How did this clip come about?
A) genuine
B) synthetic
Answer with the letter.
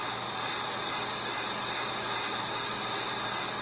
A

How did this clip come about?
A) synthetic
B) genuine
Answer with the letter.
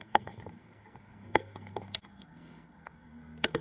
A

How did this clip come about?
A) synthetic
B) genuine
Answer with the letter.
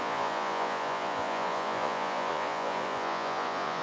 A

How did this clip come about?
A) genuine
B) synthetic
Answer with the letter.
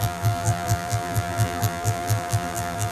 B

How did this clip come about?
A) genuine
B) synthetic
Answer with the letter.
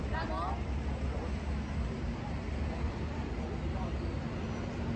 A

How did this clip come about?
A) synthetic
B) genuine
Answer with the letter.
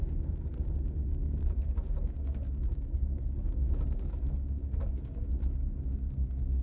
A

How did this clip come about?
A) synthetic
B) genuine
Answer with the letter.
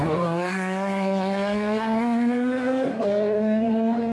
A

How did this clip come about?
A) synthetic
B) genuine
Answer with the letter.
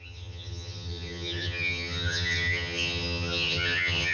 A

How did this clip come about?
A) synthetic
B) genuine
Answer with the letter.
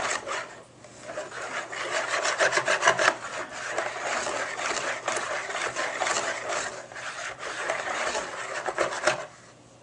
B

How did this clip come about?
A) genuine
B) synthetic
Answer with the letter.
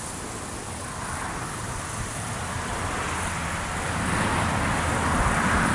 A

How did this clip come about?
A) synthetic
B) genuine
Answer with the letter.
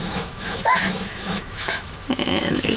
A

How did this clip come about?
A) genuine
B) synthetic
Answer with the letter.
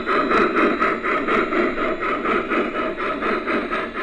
A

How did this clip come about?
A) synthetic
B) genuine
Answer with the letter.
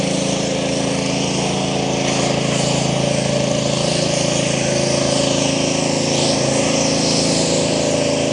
B